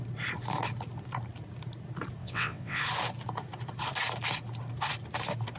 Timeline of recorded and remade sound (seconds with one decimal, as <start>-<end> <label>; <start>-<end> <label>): 0.0-2.2 recorded; 2.2-2.8 remade; 2.8-5.6 recorded